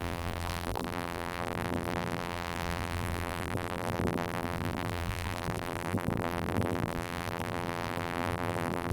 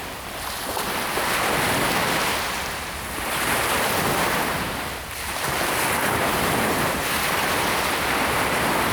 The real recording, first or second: second